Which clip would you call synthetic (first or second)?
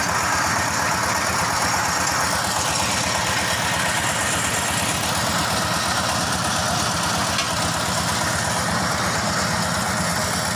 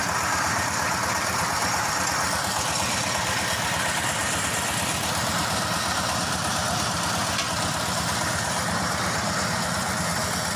second